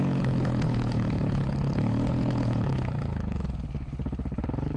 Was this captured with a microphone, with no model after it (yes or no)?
no